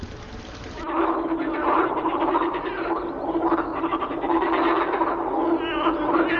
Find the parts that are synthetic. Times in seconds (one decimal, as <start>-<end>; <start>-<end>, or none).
none